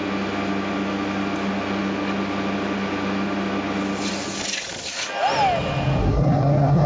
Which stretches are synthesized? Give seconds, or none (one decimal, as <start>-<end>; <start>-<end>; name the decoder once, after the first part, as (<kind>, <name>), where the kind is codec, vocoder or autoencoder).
6.0-6.9 (codec, SNAC)